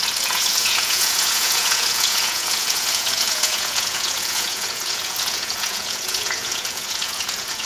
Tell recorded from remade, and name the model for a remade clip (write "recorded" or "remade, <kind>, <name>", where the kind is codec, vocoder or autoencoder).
remade, vocoder, Vocos